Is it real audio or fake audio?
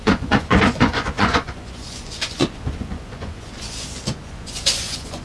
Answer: fake